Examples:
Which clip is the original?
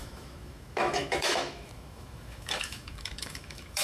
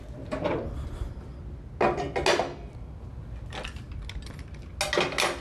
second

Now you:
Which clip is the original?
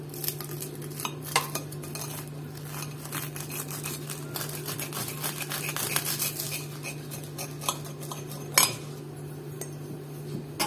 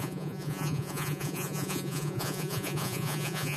first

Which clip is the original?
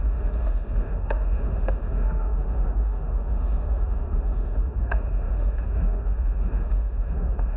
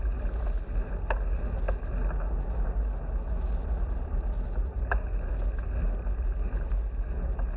second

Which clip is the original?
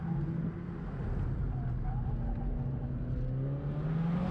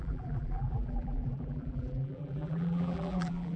first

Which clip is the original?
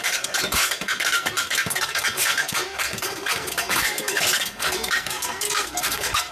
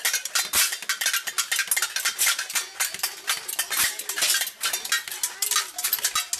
second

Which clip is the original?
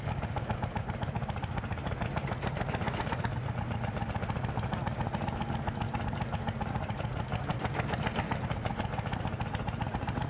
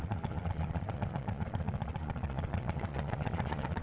first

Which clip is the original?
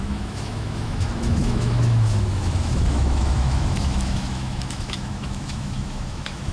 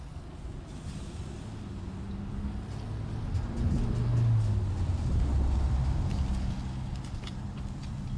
second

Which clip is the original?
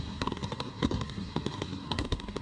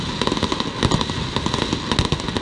second